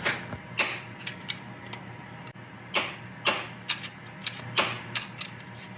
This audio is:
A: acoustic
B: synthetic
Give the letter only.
A